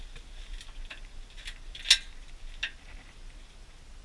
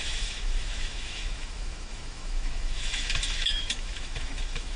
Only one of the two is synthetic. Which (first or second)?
second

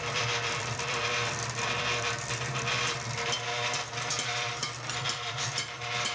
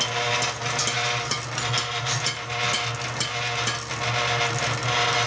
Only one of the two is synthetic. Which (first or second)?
first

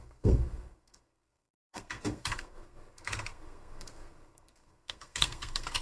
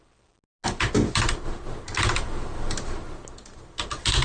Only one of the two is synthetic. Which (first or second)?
first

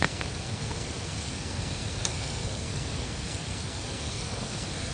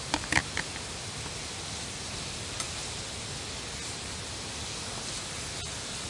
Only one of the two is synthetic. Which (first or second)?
first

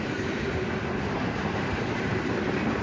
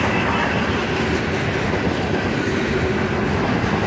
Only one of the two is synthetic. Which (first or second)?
first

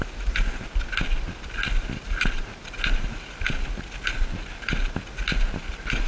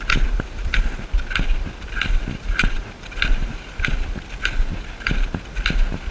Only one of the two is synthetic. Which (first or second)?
second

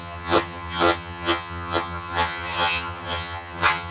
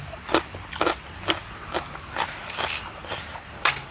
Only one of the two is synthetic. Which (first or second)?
first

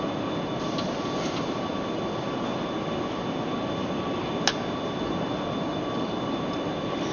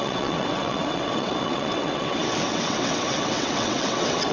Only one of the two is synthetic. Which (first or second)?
second